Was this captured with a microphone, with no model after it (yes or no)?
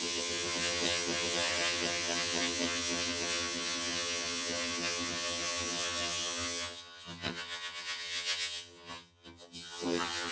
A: no